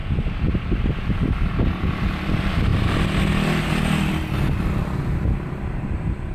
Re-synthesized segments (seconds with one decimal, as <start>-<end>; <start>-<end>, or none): none